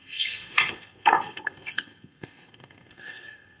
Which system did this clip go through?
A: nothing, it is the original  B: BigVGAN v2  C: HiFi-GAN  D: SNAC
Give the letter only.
D